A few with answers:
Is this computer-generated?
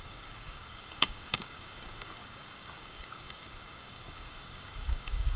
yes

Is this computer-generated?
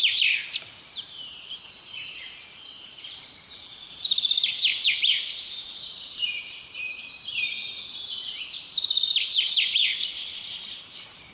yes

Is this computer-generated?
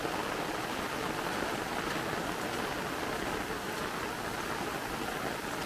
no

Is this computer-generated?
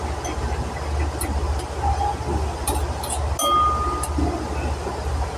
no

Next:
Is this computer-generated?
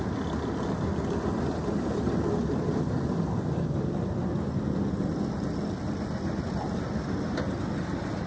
no